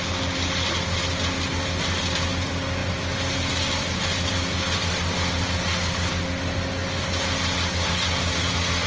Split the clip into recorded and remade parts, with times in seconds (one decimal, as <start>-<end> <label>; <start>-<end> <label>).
0.0-8.9 recorded

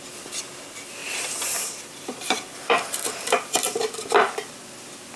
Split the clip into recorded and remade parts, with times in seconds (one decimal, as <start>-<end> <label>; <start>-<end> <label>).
0.0-1.0 recorded; 1.0-3.6 remade; 3.6-5.2 recorded

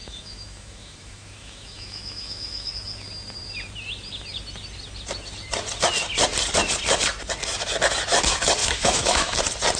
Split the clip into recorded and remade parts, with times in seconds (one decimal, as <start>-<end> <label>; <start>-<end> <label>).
0.0-2.7 remade; 2.7-8.6 recorded; 8.6-9.4 remade; 9.4-9.8 recorded

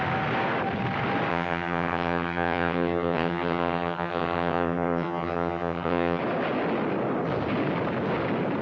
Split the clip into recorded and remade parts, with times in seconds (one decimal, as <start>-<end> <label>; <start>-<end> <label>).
0.0-1.3 recorded; 1.3-6.2 remade; 6.2-8.6 recorded

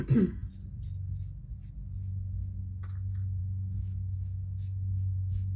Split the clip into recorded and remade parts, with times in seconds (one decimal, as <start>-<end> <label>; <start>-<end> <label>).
0.0-3.4 recorded; 3.4-5.6 remade

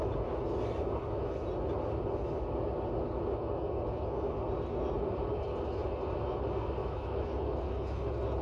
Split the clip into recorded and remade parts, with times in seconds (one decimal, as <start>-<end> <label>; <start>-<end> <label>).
0.0-6.8 recorded; 6.8-7.3 remade; 7.3-8.4 recorded